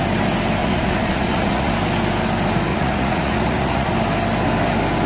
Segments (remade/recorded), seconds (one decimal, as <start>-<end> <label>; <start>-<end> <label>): 0.0-0.6 recorded; 0.6-1.7 remade; 1.7-2.7 recorded; 2.7-3.9 remade; 3.9-5.1 recorded